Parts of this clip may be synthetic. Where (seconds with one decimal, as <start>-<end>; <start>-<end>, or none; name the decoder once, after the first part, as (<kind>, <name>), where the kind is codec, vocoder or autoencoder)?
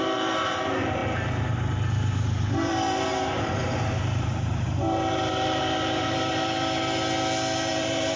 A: 0.0-6.8 (vocoder, BigVGAN v2); 7.7-8.2